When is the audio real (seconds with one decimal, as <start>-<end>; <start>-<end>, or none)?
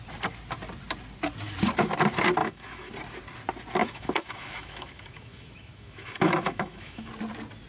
0.0-2.4; 2.9-3.8; 7.1-7.7